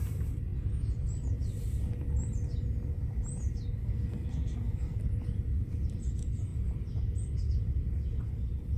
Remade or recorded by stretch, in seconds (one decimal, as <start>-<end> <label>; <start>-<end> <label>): 0.0-3.8 recorded; 3.8-5.0 remade; 5.0-8.8 recorded